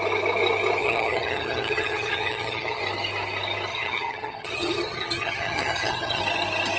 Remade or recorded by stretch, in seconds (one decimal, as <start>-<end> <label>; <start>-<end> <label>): 0.0-0.8 recorded; 0.8-2.8 remade; 2.8-3.7 recorded; 3.7-6.2 remade; 6.2-6.8 recorded